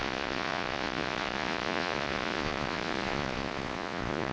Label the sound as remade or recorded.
remade